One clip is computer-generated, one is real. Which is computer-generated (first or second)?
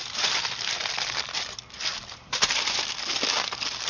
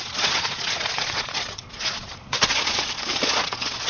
second